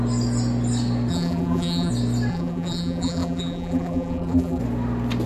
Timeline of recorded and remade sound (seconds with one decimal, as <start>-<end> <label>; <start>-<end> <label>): 0.0-1.1 recorded; 1.1-1.9 remade; 1.9-2.3 recorded; 2.3-4.6 remade; 4.6-5.3 recorded